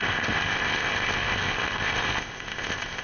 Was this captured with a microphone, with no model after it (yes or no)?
no